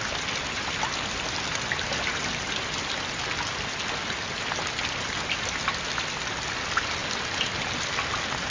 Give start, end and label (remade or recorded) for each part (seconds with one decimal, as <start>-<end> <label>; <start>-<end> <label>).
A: 0.0-8.5 recorded